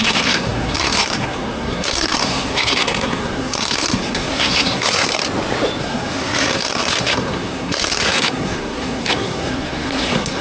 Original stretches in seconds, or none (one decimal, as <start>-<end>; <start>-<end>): 5.2-5.8